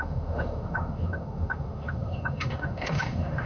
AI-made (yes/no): yes